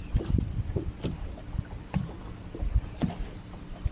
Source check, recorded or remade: recorded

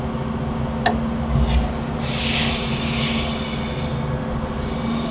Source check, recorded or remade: recorded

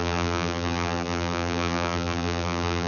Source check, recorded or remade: remade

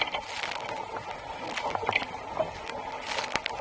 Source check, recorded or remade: recorded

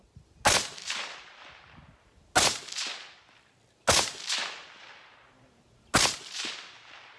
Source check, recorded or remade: recorded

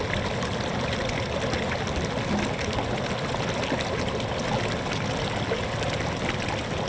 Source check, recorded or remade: recorded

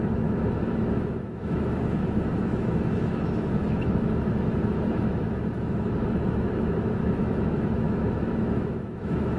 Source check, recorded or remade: remade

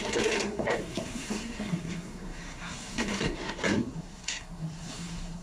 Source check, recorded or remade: remade